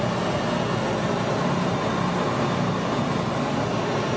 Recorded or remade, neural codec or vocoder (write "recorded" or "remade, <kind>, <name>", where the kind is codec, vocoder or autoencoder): recorded